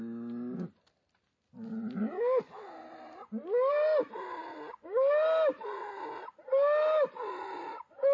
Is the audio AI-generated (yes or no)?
no